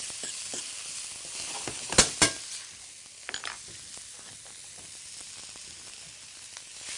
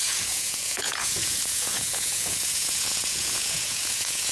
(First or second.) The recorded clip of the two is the first